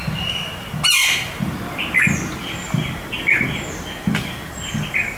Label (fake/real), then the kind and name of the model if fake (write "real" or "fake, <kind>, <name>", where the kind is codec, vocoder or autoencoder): real